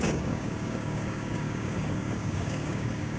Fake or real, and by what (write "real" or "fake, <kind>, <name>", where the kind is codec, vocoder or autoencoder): fake, codec, DAC